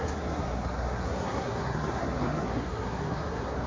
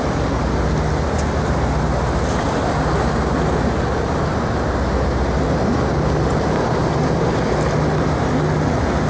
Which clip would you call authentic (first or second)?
second